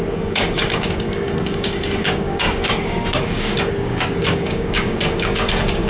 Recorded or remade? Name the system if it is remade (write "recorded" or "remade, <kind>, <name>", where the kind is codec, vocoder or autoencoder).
remade, codec, DAC